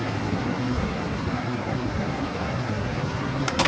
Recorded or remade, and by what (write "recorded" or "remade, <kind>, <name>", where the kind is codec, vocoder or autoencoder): remade, codec, SNAC